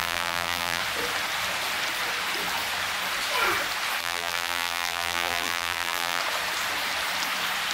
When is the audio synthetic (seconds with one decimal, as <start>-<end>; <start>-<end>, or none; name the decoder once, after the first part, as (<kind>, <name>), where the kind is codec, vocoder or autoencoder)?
0.0-0.8 (vocoder, BigVGAN v2); 4.0-6.2